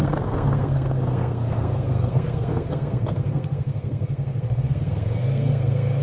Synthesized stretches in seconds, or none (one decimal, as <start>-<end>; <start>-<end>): 0.0-6.0